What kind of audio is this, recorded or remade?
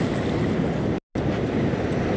recorded